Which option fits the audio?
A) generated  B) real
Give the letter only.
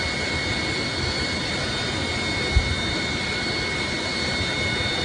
B